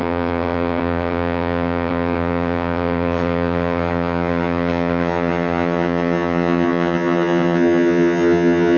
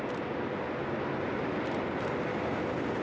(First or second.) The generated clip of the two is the first